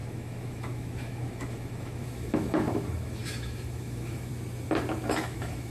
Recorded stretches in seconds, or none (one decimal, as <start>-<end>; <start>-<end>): 4.3-5.1